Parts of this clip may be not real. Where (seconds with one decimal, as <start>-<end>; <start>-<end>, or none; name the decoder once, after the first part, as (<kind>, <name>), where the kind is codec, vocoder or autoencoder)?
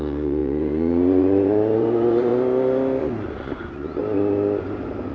0.0-2.3 (vocoder, Vocos); 3.0-4.0